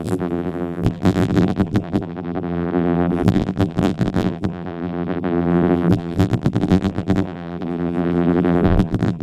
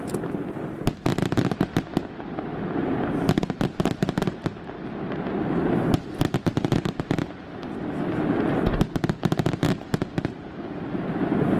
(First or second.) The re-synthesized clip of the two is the first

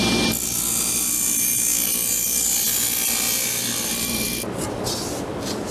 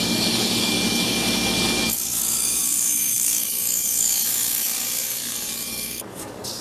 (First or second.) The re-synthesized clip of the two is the second